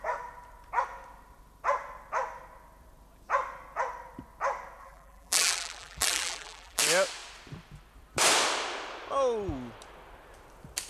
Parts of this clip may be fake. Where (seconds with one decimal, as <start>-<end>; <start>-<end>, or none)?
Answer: 4.8-6.8